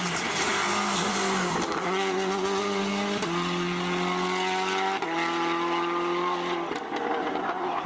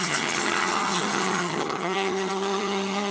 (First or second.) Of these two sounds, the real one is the first